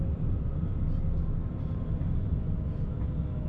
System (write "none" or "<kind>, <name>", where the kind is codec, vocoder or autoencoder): none